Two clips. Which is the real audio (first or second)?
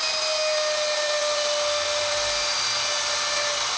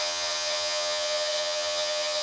first